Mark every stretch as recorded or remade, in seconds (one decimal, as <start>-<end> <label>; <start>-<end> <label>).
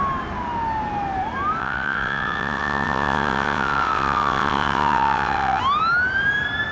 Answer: 0.0-1.6 recorded; 1.6-5.6 remade; 5.6-6.7 recorded